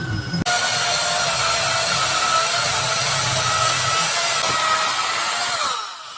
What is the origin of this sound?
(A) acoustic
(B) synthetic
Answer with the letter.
A